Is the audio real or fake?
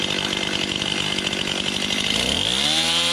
real